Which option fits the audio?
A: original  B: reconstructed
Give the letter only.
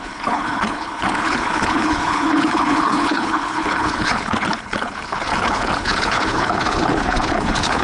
B